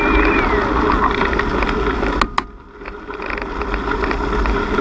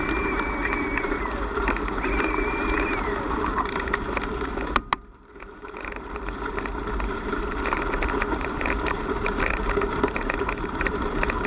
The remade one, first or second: second